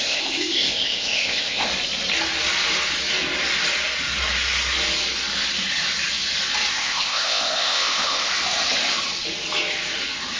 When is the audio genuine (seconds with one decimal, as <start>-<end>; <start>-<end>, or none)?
1.7-6.7; 8.3-10.4